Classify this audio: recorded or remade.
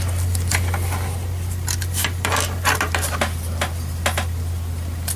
recorded